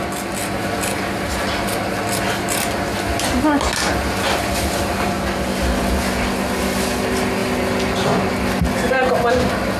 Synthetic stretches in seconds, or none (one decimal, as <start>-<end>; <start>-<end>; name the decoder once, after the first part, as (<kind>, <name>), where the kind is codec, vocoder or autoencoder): none